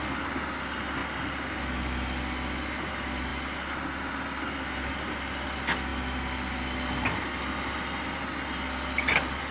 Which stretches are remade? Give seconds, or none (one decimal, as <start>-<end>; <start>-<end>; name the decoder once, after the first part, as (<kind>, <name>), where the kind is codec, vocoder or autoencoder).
none